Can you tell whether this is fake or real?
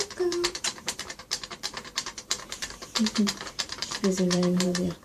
fake